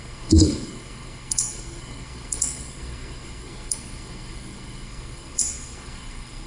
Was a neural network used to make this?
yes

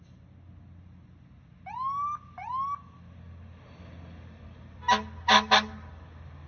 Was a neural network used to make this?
no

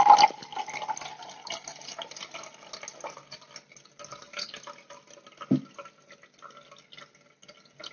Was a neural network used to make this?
no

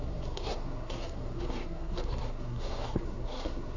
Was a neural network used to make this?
yes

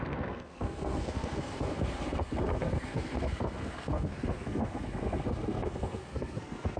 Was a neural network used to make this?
yes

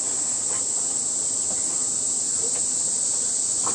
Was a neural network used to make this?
no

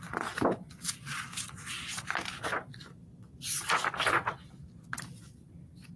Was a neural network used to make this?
no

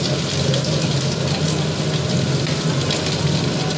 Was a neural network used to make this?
no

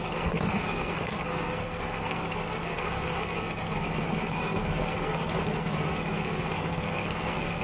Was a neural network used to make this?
yes